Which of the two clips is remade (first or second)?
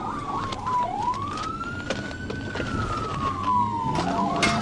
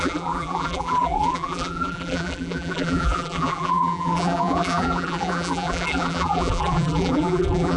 second